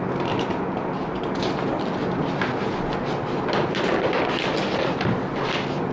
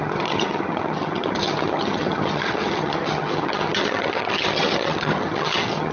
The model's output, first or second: second